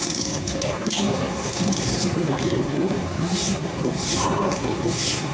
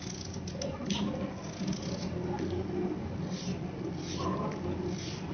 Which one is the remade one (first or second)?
first